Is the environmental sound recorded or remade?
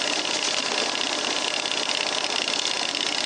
recorded